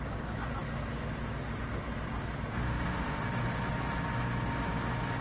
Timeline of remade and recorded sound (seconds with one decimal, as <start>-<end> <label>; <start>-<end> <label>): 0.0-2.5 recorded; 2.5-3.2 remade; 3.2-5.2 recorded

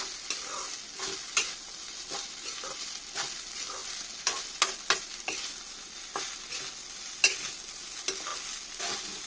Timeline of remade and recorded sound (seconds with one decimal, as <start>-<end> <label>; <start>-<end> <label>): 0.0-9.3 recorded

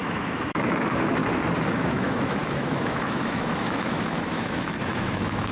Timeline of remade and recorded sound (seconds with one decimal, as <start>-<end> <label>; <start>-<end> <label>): 0.0-1.2 remade; 1.2-1.7 recorded; 1.7-5.5 remade